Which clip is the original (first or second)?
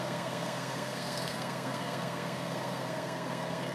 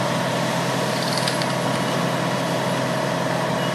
second